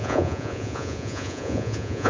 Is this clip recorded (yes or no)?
no